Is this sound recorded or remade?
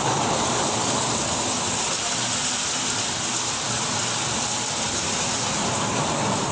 recorded